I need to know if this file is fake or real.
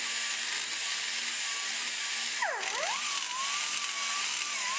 real